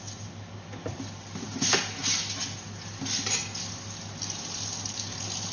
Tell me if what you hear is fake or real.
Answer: real